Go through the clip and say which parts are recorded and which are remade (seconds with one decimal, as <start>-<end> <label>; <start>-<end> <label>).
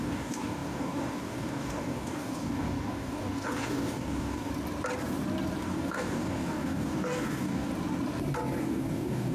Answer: 0.0-4.5 remade; 4.5-5.6 recorded; 5.6-7.7 remade; 7.7-8.6 recorded; 8.6-9.3 remade